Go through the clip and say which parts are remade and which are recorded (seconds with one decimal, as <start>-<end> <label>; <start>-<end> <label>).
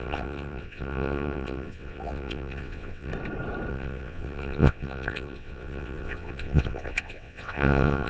0.0-3.1 remade; 3.1-3.7 recorded; 3.7-8.1 remade